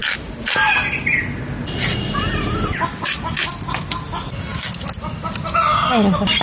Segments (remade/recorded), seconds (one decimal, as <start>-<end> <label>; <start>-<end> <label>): 0.0-6.4 recorded